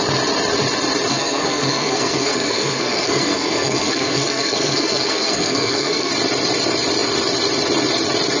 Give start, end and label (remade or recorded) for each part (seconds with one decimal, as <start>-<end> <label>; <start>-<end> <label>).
0.0-1.1 recorded; 1.1-6.1 remade; 6.1-8.4 recorded